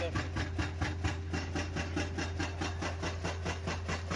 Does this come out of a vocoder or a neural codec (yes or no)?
no